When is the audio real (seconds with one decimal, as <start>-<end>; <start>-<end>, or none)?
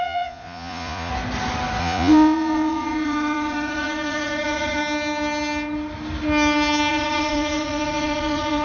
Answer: 1.1-1.8; 4.8-6.9